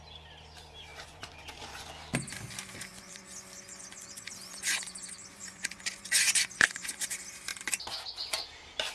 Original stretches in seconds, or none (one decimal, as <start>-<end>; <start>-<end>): 0.0-0.9; 1.9-2.9; 7.0-8.9